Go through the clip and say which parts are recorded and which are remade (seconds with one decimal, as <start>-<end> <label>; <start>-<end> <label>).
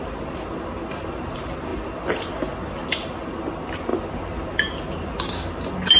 0.0-6.0 recorded